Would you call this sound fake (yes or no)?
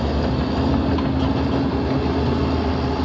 no